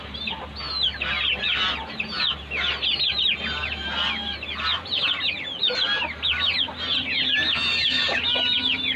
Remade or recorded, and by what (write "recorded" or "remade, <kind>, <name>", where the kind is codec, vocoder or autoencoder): recorded